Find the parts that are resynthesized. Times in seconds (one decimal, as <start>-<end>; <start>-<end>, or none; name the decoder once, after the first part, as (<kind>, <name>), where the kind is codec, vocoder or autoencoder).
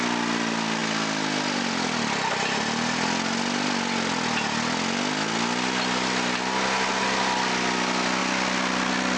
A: none